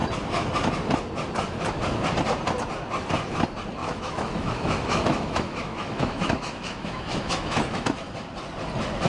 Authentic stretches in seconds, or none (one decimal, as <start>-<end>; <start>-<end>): 0.0-3.8; 8.1-9.1